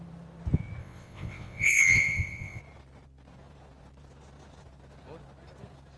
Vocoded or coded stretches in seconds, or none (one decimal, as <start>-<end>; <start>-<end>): 0.8-2.6